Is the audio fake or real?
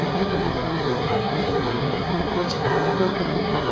fake